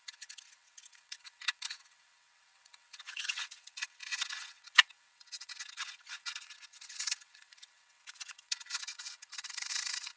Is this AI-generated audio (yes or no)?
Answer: yes